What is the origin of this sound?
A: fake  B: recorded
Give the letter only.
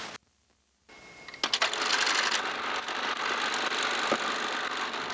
B